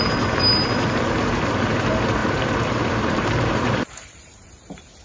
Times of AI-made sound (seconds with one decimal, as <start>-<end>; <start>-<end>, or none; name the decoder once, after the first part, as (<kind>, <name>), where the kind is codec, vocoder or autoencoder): 0.0-5.0 (vocoder, BigVGAN v2)